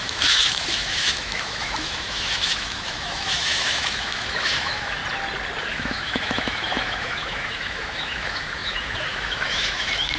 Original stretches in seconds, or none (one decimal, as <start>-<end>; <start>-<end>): 5.0-5.6